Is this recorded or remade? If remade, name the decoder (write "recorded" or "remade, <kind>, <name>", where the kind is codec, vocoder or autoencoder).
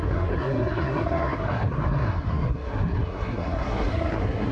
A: remade, codec, SNAC